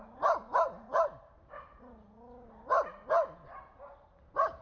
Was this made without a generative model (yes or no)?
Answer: yes